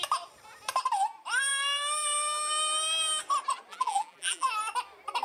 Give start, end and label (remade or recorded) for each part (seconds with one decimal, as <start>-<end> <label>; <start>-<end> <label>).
0.0-3.7 recorded; 3.7-4.5 remade; 4.5-5.2 recorded